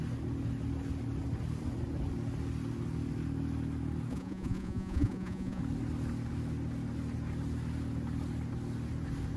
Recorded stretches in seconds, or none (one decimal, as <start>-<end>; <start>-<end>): 0.0-4.1; 5.6-9.4